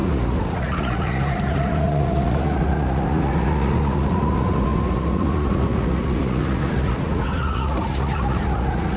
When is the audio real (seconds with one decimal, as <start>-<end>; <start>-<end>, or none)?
none